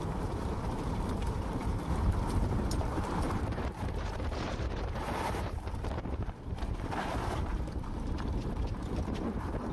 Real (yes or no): no